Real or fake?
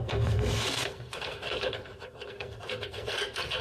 fake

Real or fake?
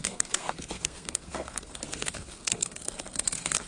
fake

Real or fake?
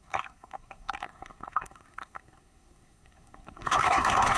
fake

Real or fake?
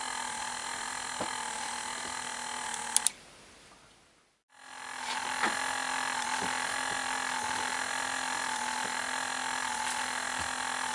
real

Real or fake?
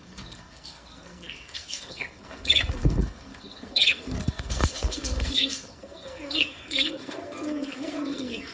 fake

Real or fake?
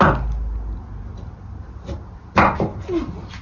real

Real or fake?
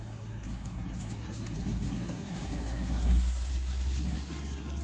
fake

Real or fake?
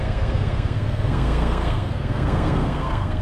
fake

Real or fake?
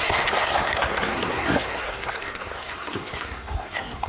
fake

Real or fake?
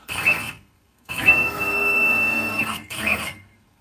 fake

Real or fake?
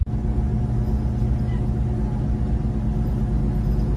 real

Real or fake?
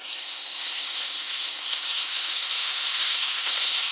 fake